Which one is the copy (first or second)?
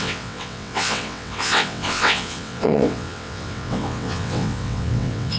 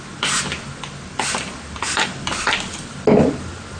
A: first